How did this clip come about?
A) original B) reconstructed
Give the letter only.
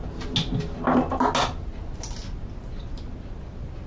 A